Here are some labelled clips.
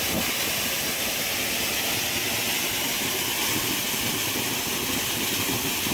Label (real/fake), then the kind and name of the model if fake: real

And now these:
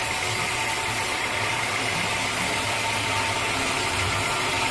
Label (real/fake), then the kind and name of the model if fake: real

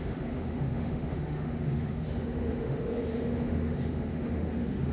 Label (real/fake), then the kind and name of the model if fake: fake, autoencoder, DAC-VAE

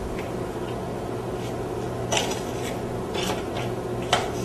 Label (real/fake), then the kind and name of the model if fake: real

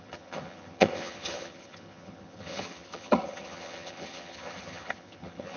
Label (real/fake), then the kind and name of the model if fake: fake, vocoder, HiFi-GAN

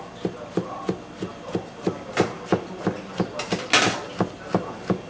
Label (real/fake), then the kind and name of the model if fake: real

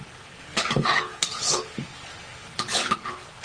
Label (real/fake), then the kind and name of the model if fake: fake, codec, HILCodec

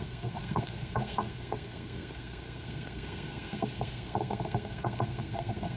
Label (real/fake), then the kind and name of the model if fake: fake, codec, SNAC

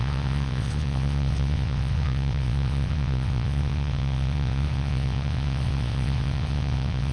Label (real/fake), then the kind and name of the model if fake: fake, vocoder, WaveNeXt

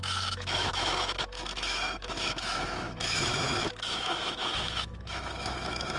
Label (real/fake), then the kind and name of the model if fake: fake, autoencoder, DAC-VAE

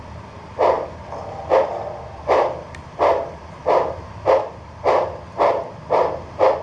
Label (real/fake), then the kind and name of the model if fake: fake, vocoder, BigVGAN v2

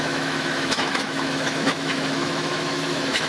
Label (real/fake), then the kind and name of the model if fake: fake, autoencoder, DAC-VAE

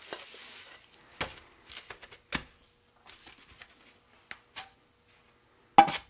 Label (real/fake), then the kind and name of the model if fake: real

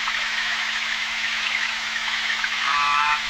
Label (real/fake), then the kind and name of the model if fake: fake, autoencoder, DAC-VAE